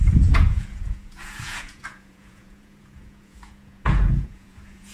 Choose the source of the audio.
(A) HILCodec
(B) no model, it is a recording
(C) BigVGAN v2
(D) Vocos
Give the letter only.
D